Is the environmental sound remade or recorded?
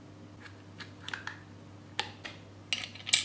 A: recorded